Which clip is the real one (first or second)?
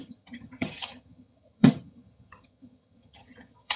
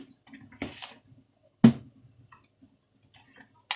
second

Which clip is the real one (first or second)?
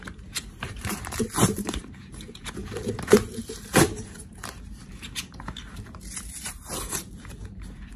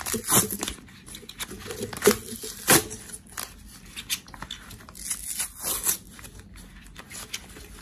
second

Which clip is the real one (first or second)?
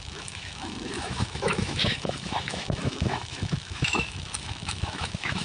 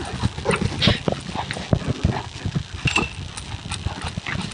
second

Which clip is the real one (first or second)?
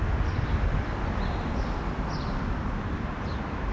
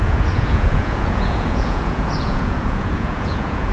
first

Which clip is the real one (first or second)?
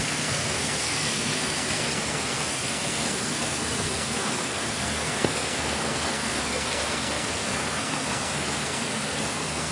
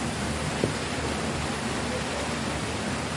second